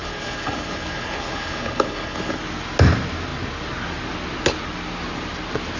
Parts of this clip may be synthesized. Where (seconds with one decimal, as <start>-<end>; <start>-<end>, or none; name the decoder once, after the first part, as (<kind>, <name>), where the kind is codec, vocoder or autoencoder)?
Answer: 0.0-2.4 (codec, HILCodec)